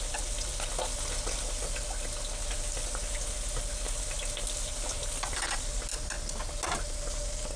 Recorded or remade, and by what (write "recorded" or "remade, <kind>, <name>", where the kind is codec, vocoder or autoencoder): recorded